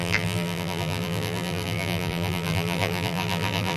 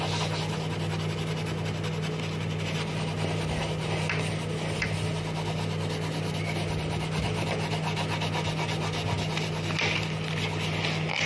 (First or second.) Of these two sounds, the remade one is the first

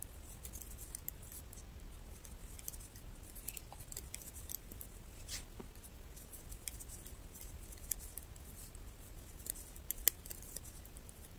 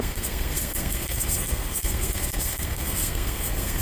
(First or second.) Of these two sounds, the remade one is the second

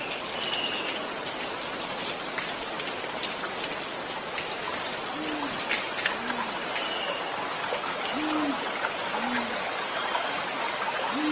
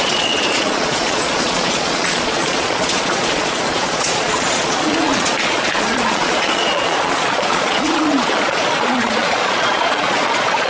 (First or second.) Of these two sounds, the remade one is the second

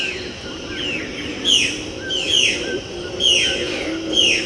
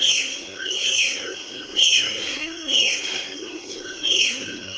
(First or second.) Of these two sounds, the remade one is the second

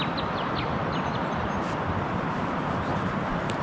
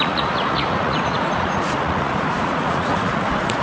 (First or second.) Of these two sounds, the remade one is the second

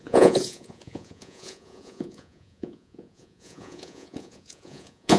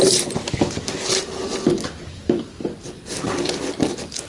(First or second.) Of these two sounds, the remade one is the first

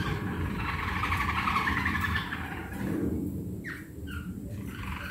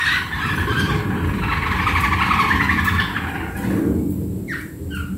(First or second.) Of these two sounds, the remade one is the first